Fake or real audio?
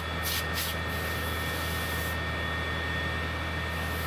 real